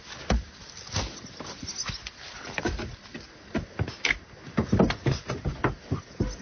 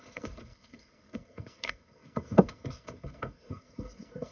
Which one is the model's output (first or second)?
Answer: second